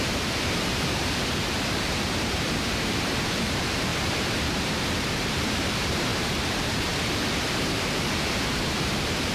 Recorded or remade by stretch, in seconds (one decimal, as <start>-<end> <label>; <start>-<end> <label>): 0.0-9.3 remade

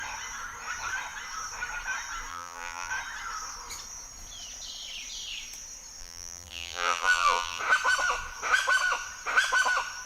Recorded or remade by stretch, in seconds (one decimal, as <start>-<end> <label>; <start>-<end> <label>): 0.0-2.3 recorded; 2.3-2.9 remade; 2.9-6.0 recorded; 6.0-7.6 remade; 7.6-10.1 recorded

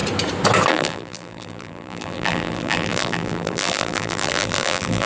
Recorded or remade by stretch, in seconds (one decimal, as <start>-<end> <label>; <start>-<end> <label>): 0.0-0.7 recorded; 0.7-5.0 remade

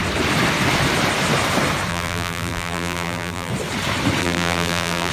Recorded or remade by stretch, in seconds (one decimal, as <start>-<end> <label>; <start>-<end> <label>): 0.0-1.9 recorded; 1.9-3.5 remade; 3.5-4.2 recorded; 4.2-5.1 remade

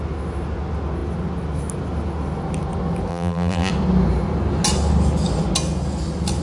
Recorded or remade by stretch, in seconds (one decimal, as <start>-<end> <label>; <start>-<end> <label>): 0.0-3.1 recorded; 3.1-3.7 remade; 3.7-6.4 recorded

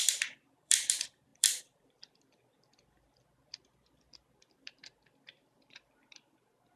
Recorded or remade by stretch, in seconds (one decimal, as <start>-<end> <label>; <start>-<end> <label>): 0.0-6.8 remade

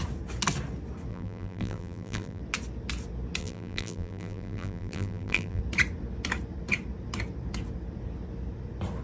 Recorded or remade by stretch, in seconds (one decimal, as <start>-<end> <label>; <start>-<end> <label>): 0.0-1.1 recorded; 1.1-2.4 remade; 2.4-3.4 recorded; 3.4-5.6 remade; 5.6-9.0 recorded

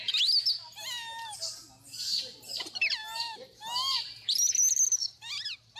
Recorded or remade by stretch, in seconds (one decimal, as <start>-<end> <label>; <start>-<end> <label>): 0.0-5.8 recorded